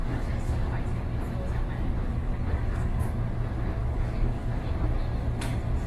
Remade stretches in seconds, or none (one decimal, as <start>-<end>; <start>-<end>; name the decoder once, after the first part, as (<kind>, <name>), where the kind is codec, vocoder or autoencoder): 0.0-0.7 (codec, DAC); 2.1-3.1; 3.8-4.7